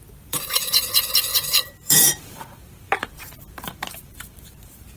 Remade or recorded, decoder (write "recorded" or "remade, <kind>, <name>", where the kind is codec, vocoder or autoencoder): remade, vocoder, BigVGAN v2